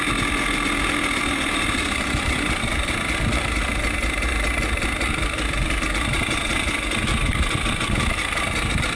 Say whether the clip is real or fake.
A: real